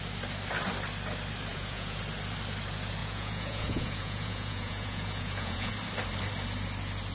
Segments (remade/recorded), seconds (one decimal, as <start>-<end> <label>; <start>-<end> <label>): 0.0-1.5 recorded; 1.5-2.0 remade; 2.0-3.0 recorded; 3.0-5.7 remade; 5.7-7.1 recorded